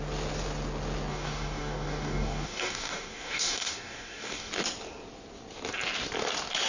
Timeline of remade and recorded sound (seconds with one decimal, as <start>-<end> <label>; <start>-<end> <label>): 0.0-1.1 recorded; 1.1-4.5 remade; 4.5-6.7 recorded